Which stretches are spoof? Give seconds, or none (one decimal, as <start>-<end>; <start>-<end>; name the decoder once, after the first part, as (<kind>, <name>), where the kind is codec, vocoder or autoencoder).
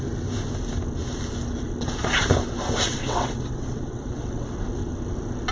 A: 2.9-4.5 (vocoder, WaveNeXt)